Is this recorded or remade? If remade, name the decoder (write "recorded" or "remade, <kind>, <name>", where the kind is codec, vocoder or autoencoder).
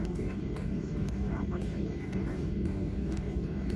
remade, codec, DAC